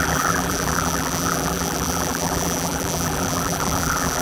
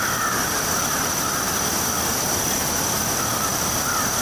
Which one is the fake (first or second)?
first